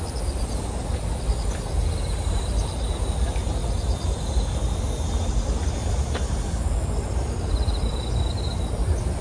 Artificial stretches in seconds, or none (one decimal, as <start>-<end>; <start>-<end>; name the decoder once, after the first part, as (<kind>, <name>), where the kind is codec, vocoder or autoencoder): none